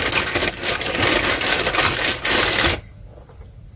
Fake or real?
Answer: real